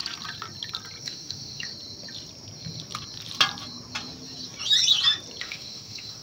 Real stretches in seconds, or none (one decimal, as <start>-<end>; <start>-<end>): 0.0-1.0; 1.7-5.4